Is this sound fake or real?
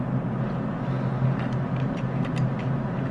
real